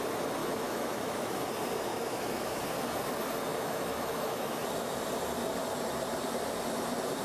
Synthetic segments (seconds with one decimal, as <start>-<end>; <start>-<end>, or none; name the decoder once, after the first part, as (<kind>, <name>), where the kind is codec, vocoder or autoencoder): 0.4-1.5 (autoencoder, DAC-VAE); 1.9-2.6; 3.5-4.6